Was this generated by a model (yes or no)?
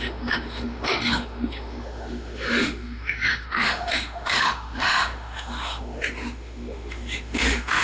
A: yes